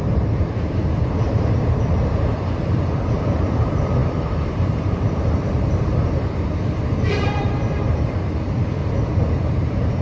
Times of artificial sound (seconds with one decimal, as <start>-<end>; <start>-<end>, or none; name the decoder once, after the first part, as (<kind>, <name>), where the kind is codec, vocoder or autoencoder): 0.0-0.8 (vocoder, BigVGAN v2); 1.8-8.8; 9.4-10.0